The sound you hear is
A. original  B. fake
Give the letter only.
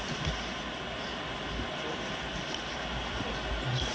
A